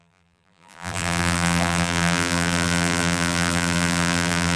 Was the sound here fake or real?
fake